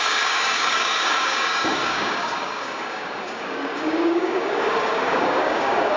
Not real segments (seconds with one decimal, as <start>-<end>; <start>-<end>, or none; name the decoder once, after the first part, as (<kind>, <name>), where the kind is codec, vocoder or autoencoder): 0.0-6.0 (codec, DAC)